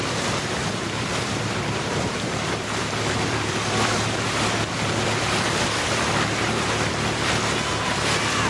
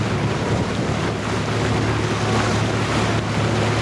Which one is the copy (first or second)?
first